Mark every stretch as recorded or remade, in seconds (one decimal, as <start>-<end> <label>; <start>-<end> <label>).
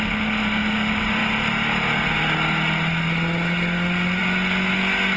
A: 0.0-5.2 recorded